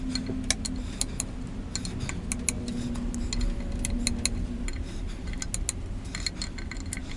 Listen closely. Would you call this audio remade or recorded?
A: recorded